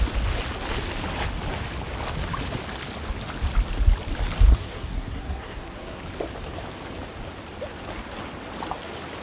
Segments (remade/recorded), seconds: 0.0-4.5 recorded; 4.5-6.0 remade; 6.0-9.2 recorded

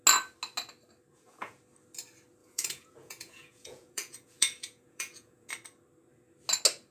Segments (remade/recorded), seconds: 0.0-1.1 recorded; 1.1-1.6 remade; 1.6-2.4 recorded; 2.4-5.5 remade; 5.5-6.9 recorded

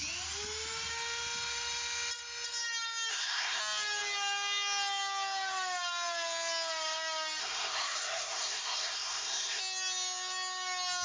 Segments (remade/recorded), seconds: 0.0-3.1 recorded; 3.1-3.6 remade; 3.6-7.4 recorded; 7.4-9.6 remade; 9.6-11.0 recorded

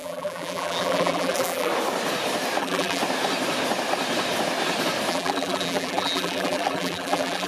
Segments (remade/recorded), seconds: 0.0-1.7 remade; 1.7-2.6 recorded; 2.6-3.0 remade; 3.0-5.1 recorded; 5.1-7.5 remade

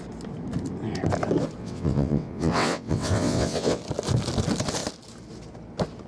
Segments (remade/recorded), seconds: 0.0-1.6 recorded; 1.6-3.8 remade; 3.8-6.1 recorded

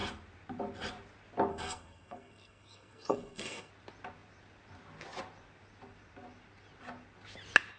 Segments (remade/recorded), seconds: 0.0-1.5 recorded; 1.5-3.7 remade; 3.7-7.8 recorded